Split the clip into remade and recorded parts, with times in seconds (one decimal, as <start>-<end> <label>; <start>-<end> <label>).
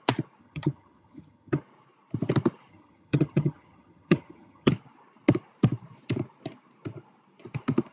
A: 0.0-0.4 recorded; 0.4-1.6 remade; 1.6-2.7 recorded; 2.7-4.7 remade; 4.7-7.9 recorded